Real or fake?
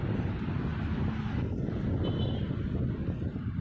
real